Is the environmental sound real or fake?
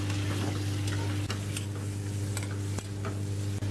real